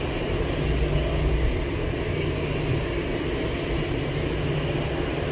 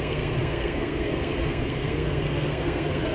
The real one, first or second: first